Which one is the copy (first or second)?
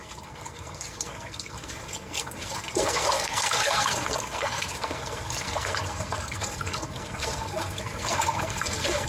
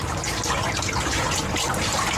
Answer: first